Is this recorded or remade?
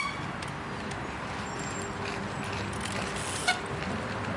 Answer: recorded